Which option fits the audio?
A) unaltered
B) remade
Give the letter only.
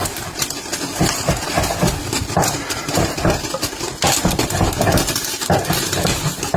A